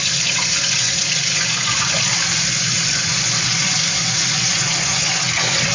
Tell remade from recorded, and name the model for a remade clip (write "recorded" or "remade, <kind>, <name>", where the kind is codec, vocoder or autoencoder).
remade, vocoder, Vocos